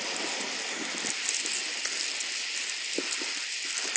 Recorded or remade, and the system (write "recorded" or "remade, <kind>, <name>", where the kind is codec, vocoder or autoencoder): recorded